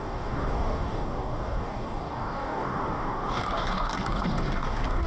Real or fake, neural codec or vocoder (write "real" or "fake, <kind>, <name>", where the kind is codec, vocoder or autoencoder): fake, codec, DAC